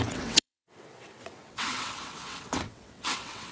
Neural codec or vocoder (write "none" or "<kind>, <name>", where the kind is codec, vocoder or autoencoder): vocoder, WaveNeXt